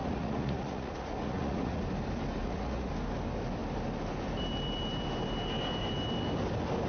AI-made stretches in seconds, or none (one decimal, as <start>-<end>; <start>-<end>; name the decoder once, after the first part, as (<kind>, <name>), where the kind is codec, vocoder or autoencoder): 0.0-1.8 (vocoder, Vocos); 2.4-2.9